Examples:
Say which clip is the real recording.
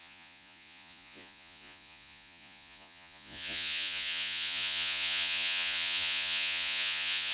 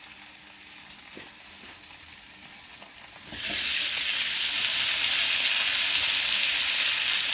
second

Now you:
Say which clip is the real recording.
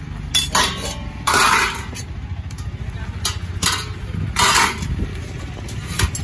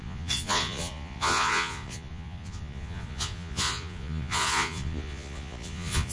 first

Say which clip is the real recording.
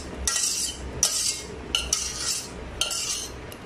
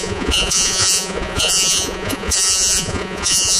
first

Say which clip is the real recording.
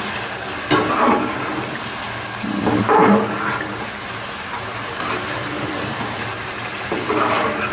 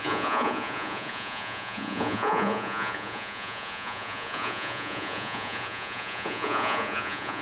first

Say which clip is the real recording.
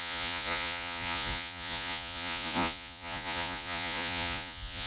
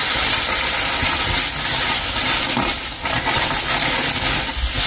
second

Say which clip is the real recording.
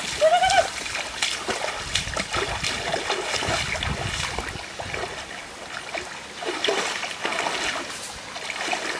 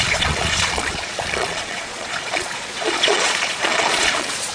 first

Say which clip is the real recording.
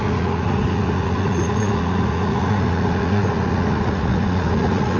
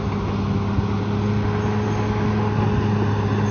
second